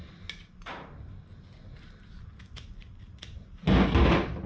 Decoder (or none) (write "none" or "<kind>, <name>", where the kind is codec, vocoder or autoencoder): none